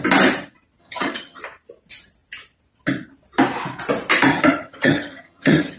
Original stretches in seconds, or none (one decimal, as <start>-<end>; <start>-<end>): 0.0-0.8; 1.4-4.3